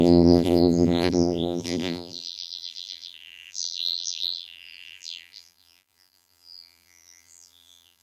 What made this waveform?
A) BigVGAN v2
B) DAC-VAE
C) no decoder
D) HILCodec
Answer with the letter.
A